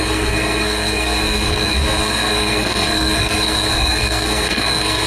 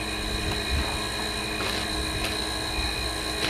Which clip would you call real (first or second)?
second